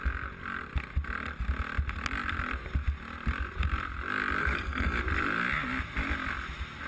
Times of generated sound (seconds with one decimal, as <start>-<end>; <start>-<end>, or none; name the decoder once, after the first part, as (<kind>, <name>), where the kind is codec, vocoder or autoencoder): 4.4-5.0 (codec, SNAC)